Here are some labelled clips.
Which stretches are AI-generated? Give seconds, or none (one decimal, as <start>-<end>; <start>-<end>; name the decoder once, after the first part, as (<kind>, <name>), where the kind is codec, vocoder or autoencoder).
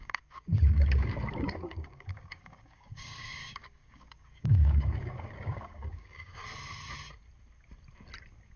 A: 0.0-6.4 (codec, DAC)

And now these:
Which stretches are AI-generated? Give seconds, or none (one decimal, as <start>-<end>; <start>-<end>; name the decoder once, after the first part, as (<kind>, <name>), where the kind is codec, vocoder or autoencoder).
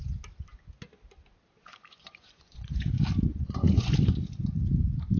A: 1.6-2.9 (vocoder, Vocos); 3.3-3.9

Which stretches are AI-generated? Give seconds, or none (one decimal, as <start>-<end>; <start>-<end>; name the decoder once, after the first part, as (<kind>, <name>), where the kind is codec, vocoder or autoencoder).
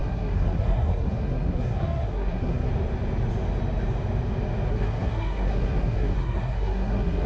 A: 0.0-2.7 (codec, SNAC); 4.7-7.3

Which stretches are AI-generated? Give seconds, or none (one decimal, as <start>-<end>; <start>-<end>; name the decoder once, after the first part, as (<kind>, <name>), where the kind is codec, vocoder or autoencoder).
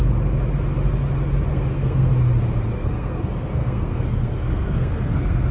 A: 1.5-2.1 (codec, SNAC); 2.7-5.5